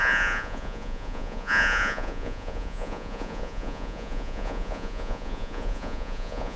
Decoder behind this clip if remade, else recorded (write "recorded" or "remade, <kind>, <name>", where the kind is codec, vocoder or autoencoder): remade, vocoder, Vocos